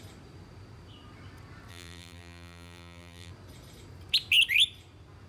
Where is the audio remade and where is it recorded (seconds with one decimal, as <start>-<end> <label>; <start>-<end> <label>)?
0.0-1.7 recorded; 1.7-3.3 remade; 3.3-5.3 recorded

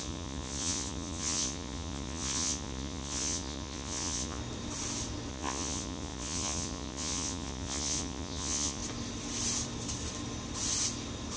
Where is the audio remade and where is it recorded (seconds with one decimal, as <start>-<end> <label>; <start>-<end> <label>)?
0.0-4.4 remade; 4.4-5.3 recorded; 5.3-8.8 remade; 8.8-11.4 recorded

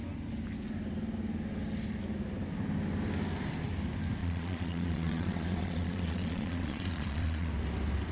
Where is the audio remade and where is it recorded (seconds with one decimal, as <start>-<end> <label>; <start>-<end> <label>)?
0.0-4.2 recorded; 4.2-7.5 remade; 7.5-8.1 recorded

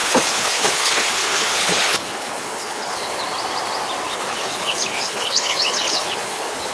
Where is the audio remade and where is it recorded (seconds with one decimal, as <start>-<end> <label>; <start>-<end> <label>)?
0.0-3.2 remade; 3.2-4.1 recorded; 4.1-6.7 remade

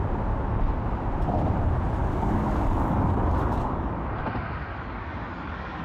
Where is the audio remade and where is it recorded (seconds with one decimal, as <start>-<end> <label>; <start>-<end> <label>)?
0.0-2.0 recorded; 2.0-3.9 remade; 3.9-4.7 recorded; 4.7-5.8 remade

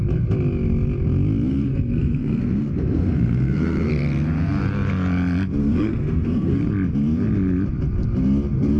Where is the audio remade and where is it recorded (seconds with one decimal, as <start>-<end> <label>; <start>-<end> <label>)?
0.0-1.5 recorded; 1.5-3.9 remade; 3.9-5.6 recorded; 5.6-6.6 remade; 6.6-8.8 recorded